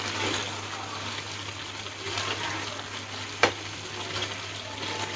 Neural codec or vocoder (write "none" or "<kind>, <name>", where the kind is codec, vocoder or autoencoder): none